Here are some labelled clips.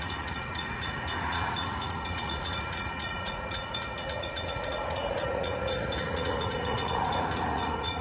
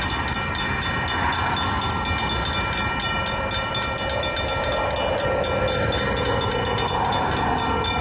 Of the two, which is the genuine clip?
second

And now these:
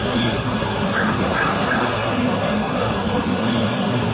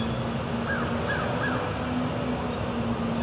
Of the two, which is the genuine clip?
second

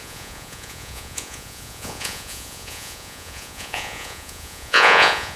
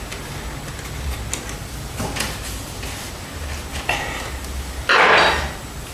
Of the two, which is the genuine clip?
second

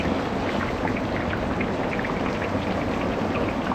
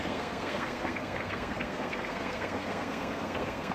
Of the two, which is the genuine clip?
first